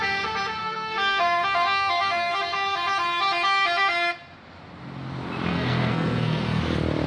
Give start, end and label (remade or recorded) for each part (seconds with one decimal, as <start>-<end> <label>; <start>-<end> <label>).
0.0-0.6 recorded; 0.6-2.4 remade; 2.4-5.5 recorded; 5.5-6.6 remade; 6.6-7.1 recorded